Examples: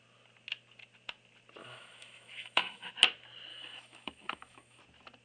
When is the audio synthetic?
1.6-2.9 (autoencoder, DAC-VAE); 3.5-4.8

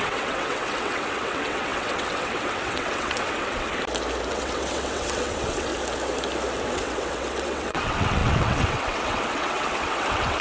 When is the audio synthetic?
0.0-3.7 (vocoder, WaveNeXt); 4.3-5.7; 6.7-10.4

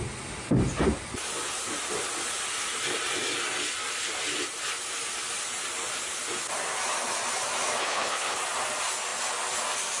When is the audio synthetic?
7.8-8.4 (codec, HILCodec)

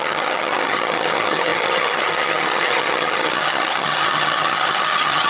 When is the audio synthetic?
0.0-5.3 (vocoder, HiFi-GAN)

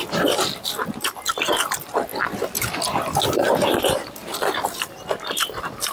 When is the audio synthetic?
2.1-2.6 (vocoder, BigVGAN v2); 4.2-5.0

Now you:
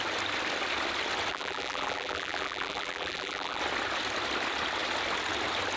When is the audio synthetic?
1.3-3.6 (vocoder, BigVGAN v2)

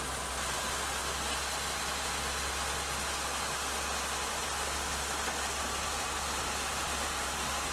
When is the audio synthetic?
0.0-1.0 (vocoder, BigVGAN v2); 5.6-7.7

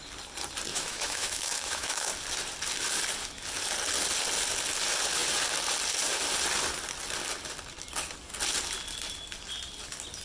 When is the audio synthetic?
0.7-2.1 (autoencoder, DAC-VAE)